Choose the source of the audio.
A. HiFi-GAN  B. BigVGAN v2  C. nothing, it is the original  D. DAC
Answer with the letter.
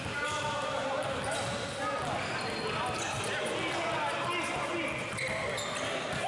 C